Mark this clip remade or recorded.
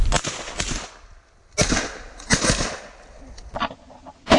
recorded